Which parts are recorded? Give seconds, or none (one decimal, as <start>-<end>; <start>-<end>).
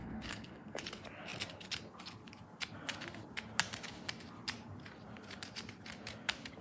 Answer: 0.8-6.6